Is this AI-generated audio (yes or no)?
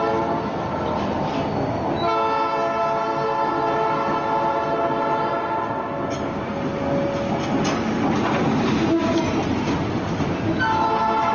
no